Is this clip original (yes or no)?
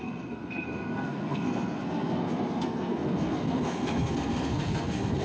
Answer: no